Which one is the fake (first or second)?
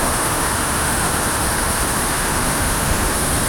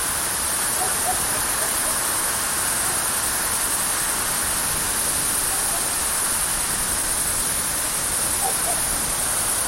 first